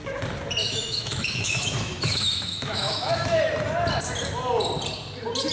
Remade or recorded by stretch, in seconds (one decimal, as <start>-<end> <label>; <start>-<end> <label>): 0.0-0.6 recorded; 0.6-3.4 remade; 3.4-5.5 recorded

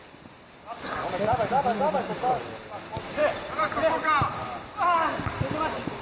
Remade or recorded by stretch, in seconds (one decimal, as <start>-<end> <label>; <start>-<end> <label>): 0.0-6.0 recorded